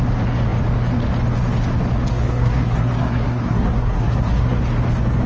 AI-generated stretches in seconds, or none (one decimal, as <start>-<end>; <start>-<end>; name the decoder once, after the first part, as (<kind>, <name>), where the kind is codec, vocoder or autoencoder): 2.1-4.6 (codec, SNAC)